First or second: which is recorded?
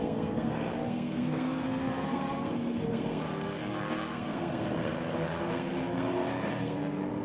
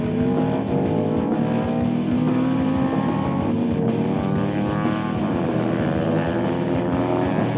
second